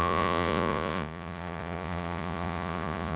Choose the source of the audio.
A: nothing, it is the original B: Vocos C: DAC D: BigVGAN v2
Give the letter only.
B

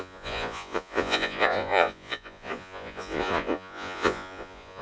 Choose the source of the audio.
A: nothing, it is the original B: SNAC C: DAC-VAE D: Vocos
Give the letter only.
D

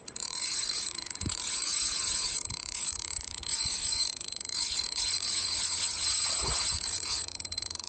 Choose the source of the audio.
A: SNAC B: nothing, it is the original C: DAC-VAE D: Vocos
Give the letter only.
D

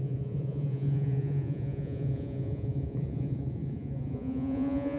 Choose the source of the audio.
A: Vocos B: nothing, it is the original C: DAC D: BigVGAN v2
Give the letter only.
A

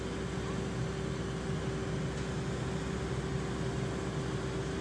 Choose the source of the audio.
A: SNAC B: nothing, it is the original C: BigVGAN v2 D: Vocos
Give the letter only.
B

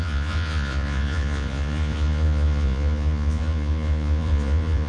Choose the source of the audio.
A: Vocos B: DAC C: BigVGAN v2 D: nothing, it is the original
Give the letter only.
A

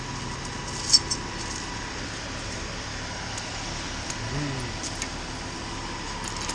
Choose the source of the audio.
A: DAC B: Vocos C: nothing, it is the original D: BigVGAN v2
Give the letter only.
C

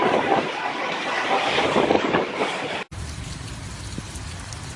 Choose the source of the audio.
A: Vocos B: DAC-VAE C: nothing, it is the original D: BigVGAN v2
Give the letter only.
C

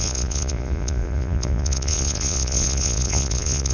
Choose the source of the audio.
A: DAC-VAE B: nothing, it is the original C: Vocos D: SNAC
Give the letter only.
C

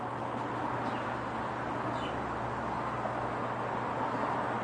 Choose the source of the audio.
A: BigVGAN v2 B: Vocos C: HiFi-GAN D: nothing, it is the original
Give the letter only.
D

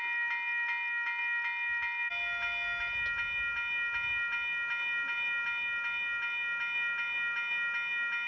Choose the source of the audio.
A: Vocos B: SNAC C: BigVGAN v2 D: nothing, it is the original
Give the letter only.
D